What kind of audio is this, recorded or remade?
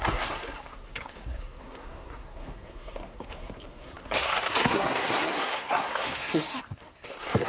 remade